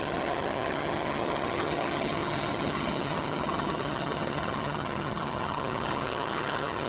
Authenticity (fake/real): fake